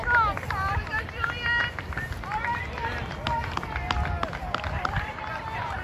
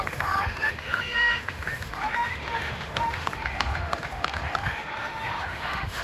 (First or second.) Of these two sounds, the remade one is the second